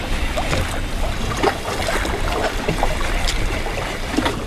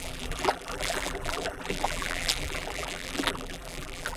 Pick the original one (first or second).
first